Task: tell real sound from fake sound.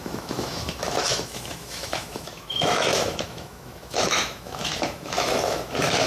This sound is fake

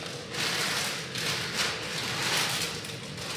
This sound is real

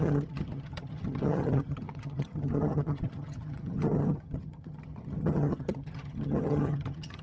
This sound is fake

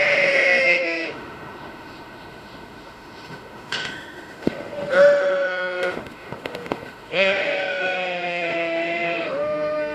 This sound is fake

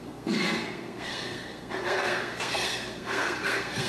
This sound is fake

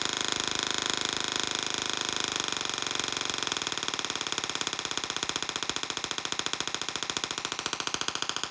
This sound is real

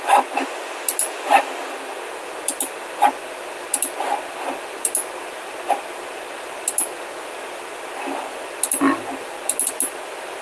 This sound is real